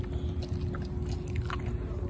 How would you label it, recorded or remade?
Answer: recorded